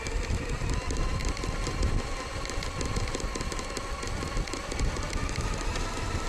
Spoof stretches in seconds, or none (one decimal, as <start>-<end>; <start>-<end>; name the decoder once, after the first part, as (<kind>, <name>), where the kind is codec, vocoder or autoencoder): 0.0-1.2 (vocoder, BigVGAN v2); 4.8-6.3